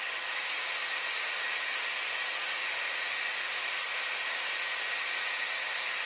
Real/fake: real